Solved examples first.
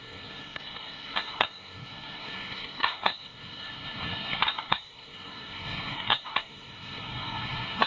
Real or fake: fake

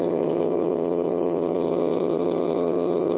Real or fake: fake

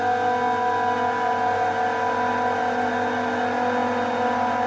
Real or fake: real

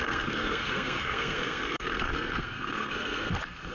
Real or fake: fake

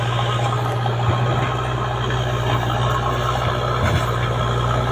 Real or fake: real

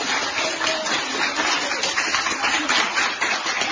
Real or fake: real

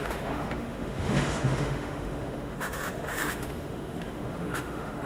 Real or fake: fake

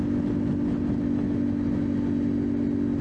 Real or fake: real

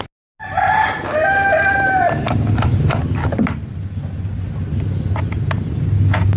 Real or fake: real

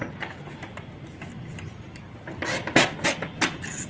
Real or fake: real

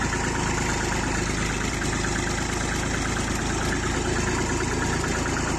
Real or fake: real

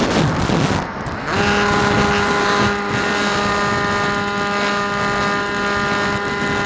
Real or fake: real